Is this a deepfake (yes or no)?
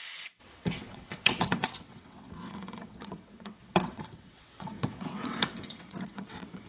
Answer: yes